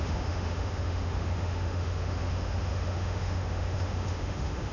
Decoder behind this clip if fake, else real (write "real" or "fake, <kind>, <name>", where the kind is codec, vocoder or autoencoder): fake, autoencoder, DAC-VAE